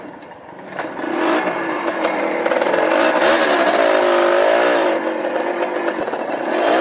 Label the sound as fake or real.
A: real